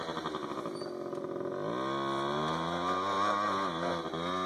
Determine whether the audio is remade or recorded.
recorded